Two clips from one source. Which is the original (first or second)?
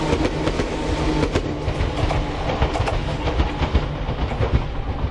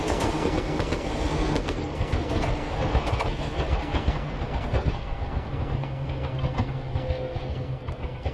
first